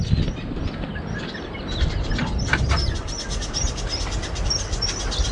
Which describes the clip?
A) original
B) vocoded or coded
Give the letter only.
A